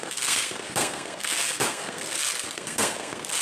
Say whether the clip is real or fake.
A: fake